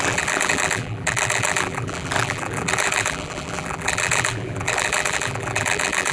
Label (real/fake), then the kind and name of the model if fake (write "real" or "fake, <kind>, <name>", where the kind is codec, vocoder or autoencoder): fake, vocoder, BigVGAN v2